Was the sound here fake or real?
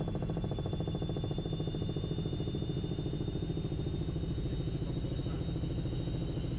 real